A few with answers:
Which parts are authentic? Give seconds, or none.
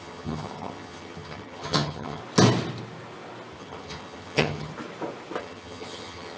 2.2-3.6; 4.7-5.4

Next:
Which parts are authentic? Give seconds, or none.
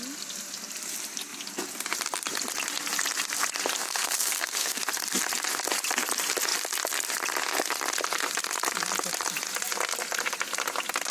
0.0-3.8; 4.8-11.1